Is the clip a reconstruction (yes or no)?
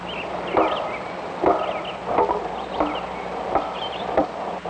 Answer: no